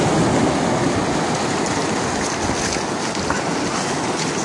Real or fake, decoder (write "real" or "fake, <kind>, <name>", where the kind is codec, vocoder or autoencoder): real